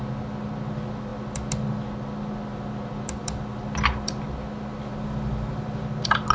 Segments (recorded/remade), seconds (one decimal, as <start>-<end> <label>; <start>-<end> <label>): 0.0-6.3 recorded

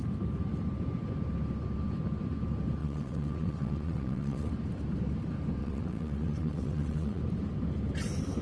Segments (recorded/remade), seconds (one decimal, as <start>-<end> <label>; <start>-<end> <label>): 0.0-2.8 recorded; 2.8-4.5 remade; 4.5-5.6 recorded; 5.6-7.2 remade; 7.2-8.4 recorded

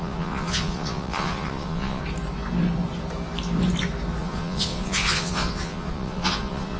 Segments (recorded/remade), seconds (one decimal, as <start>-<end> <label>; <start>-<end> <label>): 0.0-2.0 remade; 2.0-4.2 recorded; 4.2-6.8 remade

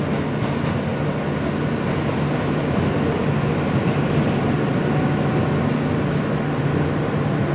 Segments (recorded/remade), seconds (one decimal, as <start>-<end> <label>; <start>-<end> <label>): 0.0-7.5 recorded